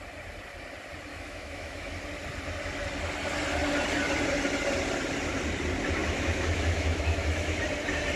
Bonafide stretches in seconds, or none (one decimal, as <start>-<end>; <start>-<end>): 0.0-1.1; 1.9-6.0; 7.6-8.2